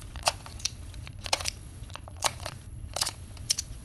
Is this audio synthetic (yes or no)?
yes